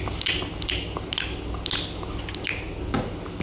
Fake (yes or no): no